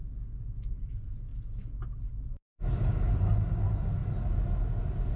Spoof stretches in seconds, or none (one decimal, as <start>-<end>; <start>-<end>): 0.7-1.3; 2.9-4.0; 4.8-5.2